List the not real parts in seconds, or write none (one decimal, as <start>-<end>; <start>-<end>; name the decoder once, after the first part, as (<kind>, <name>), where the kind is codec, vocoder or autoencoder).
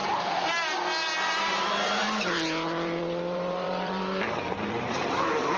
1.0-4.4 (vocoder, BigVGAN v2)